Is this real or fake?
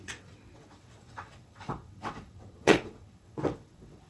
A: fake